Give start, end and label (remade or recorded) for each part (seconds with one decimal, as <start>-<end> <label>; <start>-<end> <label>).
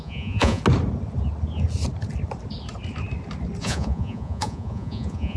0.0-0.6 remade; 0.6-3.6 recorded; 3.6-5.4 remade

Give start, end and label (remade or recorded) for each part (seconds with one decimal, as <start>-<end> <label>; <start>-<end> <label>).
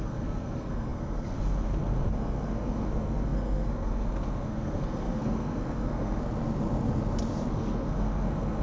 0.0-6.2 remade; 6.2-7.5 recorded; 7.5-8.6 remade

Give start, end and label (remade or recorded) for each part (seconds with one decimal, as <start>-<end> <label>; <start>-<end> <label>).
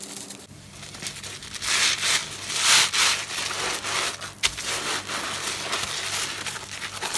0.0-7.2 recorded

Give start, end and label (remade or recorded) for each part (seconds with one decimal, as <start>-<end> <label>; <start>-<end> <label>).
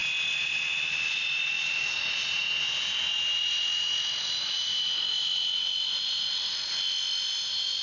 0.0-7.8 recorded